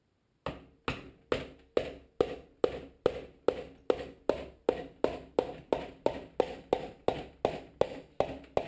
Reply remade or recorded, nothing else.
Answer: recorded